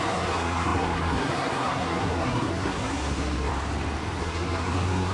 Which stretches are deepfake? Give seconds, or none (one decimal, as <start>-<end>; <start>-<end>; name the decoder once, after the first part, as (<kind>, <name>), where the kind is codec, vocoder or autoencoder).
0.0-3.5 (codec, SNAC); 4.2-5.1